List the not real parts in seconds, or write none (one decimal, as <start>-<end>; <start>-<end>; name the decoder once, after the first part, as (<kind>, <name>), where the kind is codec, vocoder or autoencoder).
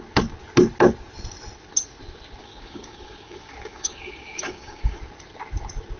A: 2.4-5.0 (codec, DAC)